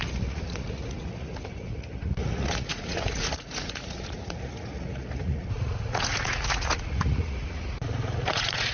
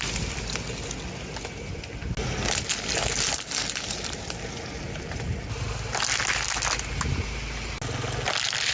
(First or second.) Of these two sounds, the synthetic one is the first